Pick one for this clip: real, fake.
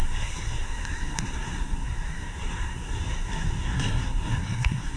fake